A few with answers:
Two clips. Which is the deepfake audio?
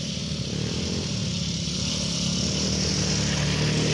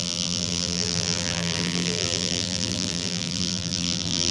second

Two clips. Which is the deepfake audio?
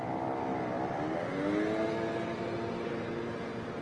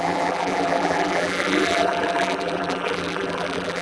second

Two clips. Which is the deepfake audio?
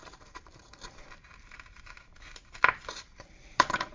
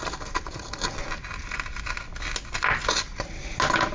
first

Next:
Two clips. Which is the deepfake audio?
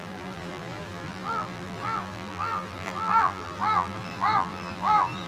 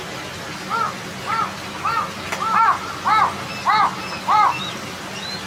first